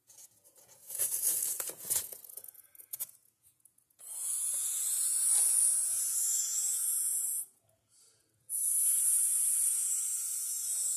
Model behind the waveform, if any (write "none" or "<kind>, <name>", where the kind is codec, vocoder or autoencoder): vocoder, Vocos